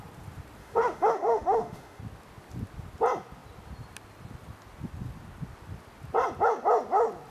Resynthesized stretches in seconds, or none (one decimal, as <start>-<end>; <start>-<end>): 0.6-2.0